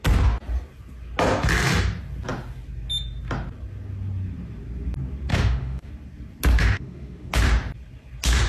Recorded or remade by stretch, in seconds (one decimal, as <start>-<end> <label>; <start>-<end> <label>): 0.0-5.3 recorded; 5.3-5.9 remade; 5.9-6.5 recorded; 6.5-7.3 remade; 7.3-8.5 recorded